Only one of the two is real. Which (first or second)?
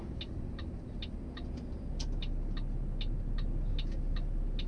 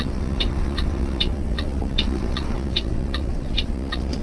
first